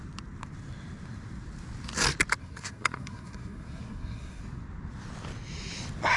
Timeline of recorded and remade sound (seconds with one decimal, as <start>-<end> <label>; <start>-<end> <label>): 0.0-2.4 recorded; 2.4-4.4 remade; 4.4-6.2 recorded